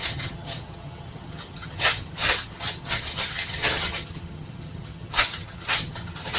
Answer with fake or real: fake